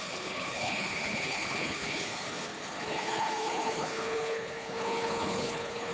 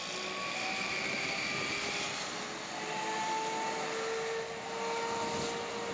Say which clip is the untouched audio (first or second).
second